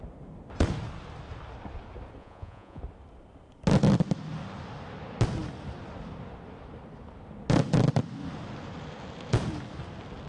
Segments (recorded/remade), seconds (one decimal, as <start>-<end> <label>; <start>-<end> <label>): 0.0-2.2 recorded; 2.2-2.8 remade; 2.8-10.3 recorded